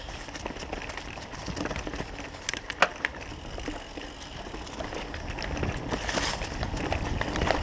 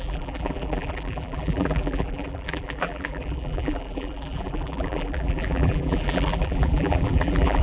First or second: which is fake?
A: second